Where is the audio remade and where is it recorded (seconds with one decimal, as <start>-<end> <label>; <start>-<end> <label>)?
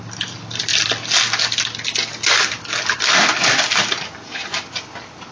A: 0.0-0.7 remade; 0.7-3.9 recorded; 3.9-5.3 remade